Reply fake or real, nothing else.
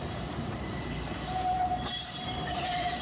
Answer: fake